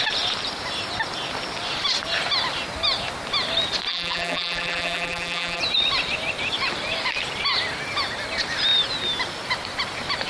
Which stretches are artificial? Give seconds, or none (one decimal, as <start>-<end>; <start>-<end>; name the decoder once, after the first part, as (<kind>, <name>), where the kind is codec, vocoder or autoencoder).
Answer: 3.9-5.6 (vocoder, BigVGAN v2)